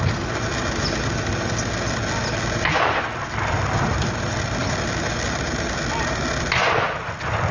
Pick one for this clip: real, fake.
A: real